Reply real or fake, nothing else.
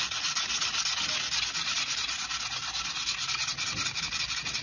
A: real